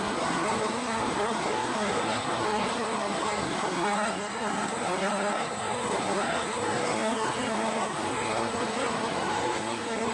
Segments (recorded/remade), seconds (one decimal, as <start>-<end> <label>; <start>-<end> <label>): 0.0-10.1 remade